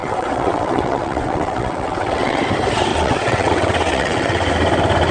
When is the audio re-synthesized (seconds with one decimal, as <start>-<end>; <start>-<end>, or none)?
0.0-2.4; 2.9-4.5